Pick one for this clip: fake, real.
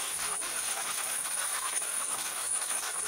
fake